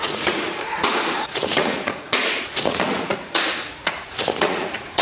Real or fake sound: fake